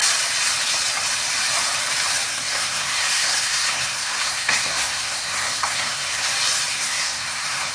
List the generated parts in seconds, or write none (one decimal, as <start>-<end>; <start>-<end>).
2.3-6.3; 6.7-7.7